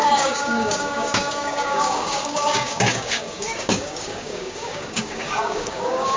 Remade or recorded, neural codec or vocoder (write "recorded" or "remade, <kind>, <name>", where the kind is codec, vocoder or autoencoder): remade, codec, DAC